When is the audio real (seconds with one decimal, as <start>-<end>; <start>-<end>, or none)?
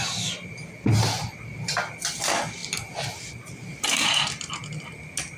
0.0-5.4